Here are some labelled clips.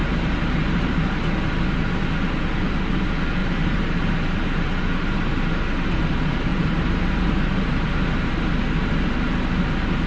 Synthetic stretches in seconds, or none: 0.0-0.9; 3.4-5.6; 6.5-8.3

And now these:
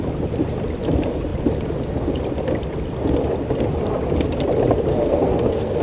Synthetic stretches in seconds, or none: 4.9-5.8